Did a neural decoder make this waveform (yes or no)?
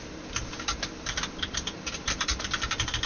yes